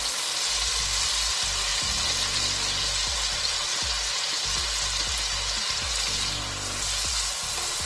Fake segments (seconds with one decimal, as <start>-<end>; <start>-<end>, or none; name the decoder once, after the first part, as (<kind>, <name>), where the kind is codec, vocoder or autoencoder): none